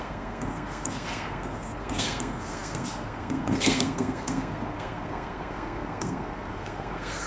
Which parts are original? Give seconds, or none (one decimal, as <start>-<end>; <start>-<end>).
none